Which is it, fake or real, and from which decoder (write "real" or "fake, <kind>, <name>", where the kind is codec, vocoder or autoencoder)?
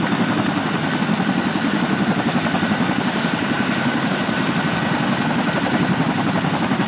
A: real